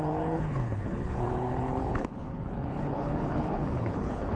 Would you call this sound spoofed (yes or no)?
yes